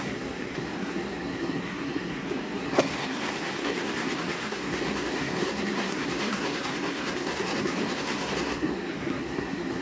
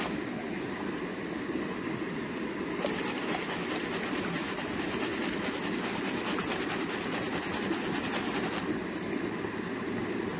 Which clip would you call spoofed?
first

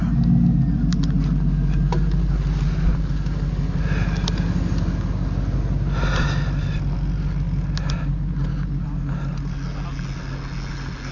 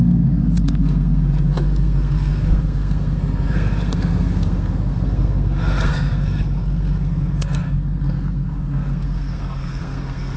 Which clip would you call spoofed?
second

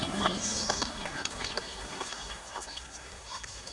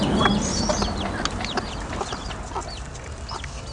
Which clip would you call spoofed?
first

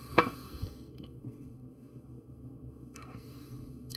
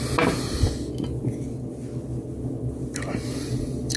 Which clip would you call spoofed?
first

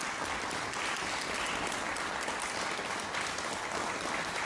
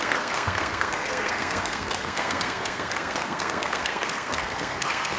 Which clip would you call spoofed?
second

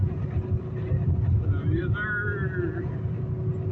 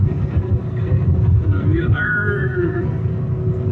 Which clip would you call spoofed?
second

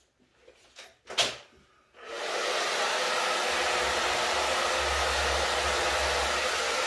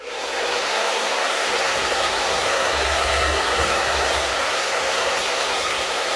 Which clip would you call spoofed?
second